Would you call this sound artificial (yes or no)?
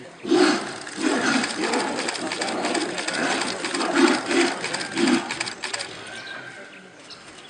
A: no